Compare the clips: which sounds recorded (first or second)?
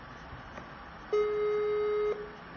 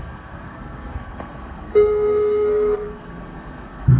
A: first